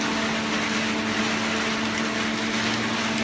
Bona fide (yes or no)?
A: yes